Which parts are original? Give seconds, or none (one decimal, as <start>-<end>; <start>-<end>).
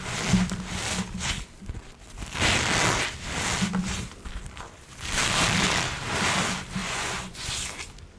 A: 0.0-6.8; 7.5-8.2